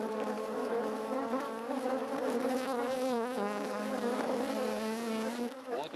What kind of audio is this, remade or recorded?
remade